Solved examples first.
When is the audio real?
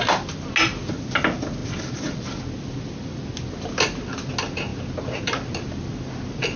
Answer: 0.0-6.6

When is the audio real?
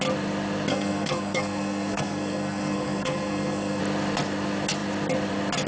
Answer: 0.0-0.7; 3.8-5.7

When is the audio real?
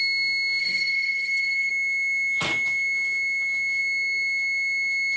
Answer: 0.0-0.6; 1.7-5.2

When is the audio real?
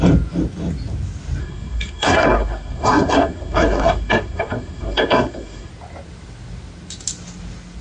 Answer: 0.0-1.4; 5.7-7.8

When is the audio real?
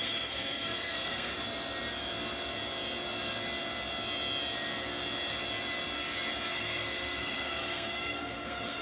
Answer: 1.3-6.5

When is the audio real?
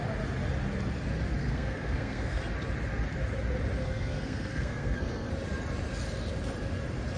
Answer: 0.0-1.4; 2.4-3.8; 5.3-7.2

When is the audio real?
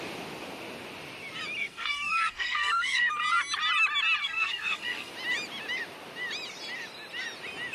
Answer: 0.0-1.6; 3.1-4.2; 5.1-7.7